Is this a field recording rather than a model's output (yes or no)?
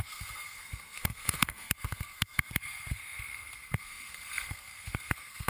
no